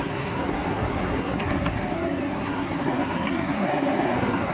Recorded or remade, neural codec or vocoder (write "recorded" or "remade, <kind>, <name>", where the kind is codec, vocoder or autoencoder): remade, codec, SNAC